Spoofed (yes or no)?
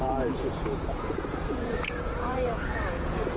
yes